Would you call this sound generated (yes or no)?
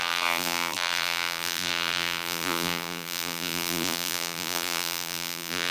yes